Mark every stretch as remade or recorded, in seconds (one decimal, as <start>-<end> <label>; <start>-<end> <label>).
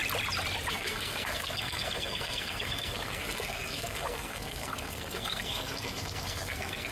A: 0.0-0.7 recorded; 0.7-6.9 remade